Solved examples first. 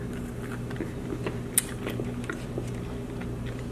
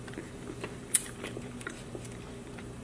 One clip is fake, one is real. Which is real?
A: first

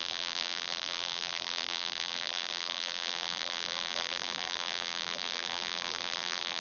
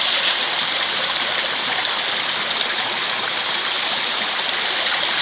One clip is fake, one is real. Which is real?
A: second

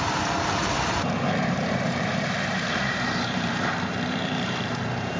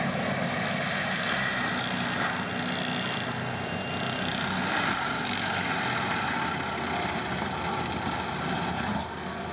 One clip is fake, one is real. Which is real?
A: second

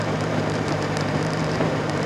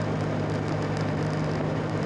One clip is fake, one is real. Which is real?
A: second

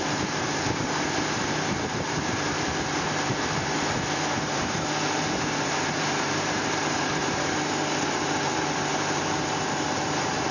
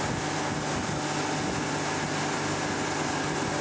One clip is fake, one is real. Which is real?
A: second